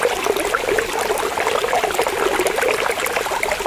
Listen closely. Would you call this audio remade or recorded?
recorded